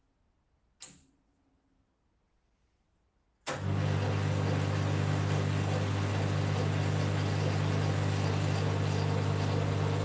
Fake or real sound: real